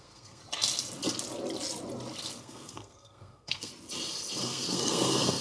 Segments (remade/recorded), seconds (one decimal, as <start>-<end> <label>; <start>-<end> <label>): 0.0-0.4 remade; 0.4-2.4 recorded; 2.4-3.7 remade; 3.7-4.4 recorded; 4.4-5.4 remade